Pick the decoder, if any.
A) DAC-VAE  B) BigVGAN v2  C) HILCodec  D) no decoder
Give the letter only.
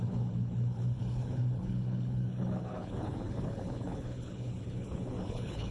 C